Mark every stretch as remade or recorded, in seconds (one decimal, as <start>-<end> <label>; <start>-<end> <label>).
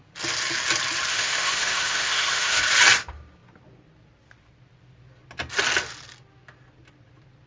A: 0.0-1.1 recorded; 1.1-2.6 remade; 2.6-7.5 recorded